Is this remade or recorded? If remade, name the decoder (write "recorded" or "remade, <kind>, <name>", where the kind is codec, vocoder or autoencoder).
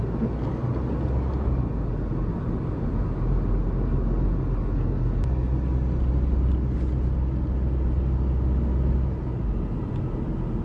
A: recorded